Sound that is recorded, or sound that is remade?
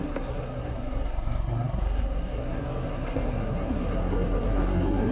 remade